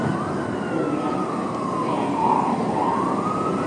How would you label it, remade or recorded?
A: recorded